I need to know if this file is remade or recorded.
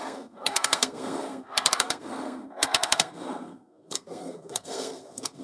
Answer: remade